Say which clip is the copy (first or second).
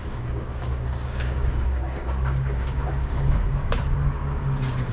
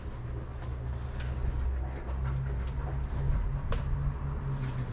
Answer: first